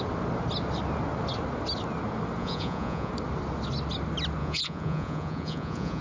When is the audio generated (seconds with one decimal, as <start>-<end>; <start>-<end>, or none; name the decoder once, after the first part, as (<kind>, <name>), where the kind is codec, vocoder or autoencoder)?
2.4-3.1 (vocoder, Vocos); 4.4-6.0